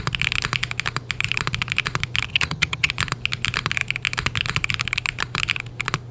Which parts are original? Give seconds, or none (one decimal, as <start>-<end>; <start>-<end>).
0.0-2.3; 2.9-6.1